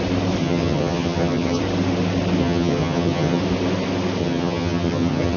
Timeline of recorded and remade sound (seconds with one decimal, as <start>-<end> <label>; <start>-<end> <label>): 0.0-0.4 recorded; 0.4-1.6 remade; 1.6-2.4 recorded; 2.4-3.4 remade; 3.4-4.2 recorded; 4.2-5.4 remade